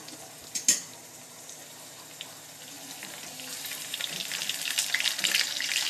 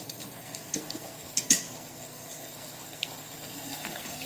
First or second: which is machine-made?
second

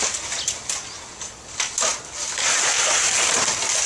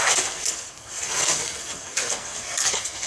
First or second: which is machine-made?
second